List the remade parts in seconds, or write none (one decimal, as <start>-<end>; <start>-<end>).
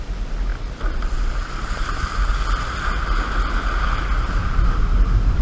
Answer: 4.4-5.4